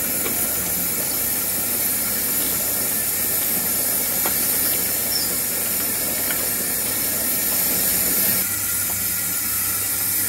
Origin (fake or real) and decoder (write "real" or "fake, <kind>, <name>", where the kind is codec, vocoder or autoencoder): real